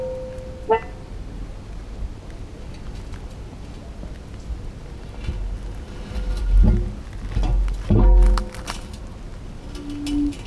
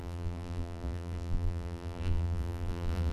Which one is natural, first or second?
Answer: first